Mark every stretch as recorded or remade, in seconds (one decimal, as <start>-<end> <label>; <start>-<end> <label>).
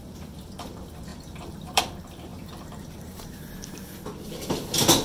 0.0-1.1 recorded; 1.1-1.8 remade; 1.8-2.3 recorded; 2.3-3.4 remade; 3.4-5.0 recorded